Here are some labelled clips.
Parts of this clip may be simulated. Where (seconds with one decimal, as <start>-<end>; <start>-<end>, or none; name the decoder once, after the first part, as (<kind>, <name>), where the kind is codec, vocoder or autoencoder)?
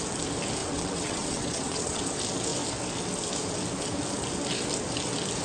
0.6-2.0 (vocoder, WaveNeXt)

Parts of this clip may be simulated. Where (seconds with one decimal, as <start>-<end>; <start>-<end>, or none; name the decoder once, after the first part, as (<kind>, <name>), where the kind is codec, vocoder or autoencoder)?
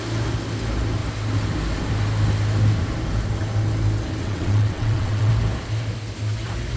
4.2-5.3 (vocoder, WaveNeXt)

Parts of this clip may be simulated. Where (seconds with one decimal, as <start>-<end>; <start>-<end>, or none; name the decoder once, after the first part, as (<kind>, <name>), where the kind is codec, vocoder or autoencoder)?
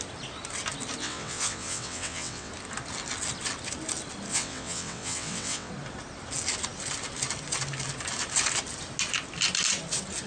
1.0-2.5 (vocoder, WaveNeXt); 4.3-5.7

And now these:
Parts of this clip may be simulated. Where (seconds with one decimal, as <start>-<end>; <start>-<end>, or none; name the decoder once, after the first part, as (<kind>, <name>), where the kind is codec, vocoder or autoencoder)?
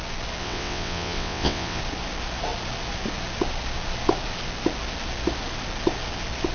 0.4-1.8 (vocoder, WaveNeXt)